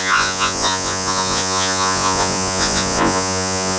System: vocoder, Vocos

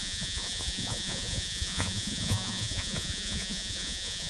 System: vocoder, Vocos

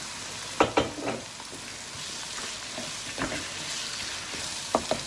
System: none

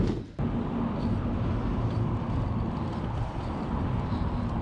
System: none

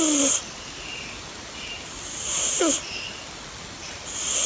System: none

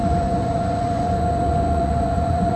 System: vocoder, Vocos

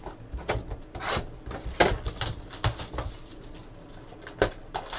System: none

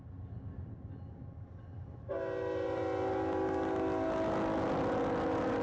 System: none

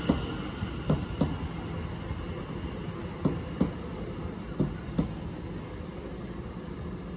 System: none